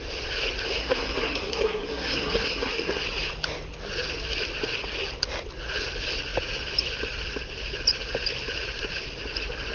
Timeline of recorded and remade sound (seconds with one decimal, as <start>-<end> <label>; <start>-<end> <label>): 0.0-0.8 recorded; 0.8-3.0 remade; 3.0-9.7 recorded